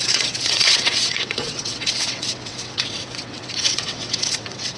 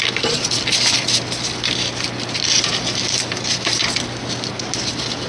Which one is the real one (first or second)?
second